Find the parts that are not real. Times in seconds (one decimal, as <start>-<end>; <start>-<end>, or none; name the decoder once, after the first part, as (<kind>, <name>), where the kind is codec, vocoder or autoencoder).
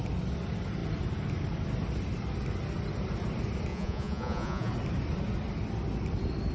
3.7-4.7 (vocoder, Vocos)